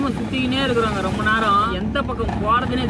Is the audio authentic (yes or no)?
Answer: yes